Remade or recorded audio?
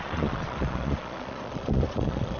remade